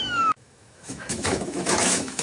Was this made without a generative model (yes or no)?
no